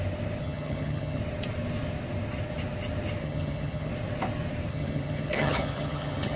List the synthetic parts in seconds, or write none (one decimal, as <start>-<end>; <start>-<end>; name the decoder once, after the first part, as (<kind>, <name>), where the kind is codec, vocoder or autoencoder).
0.4-1.2 (vocoder, HiFi-GAN); 3.2-3.9; 4.7-6.4